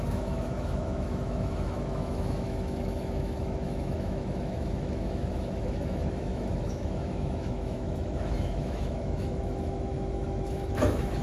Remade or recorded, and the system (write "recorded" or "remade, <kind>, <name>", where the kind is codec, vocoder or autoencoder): remade, autoencoder, DAC-VAE